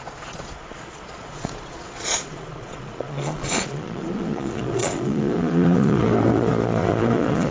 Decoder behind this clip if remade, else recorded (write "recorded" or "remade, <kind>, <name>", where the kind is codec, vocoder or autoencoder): remade, vocoder, Vocos